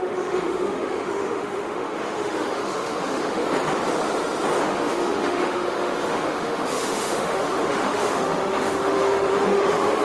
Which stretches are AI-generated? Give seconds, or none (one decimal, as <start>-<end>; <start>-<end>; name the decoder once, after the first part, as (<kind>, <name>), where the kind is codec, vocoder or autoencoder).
0.0-3.4 (autoencoder, DAC-VAE); 4.6-10.0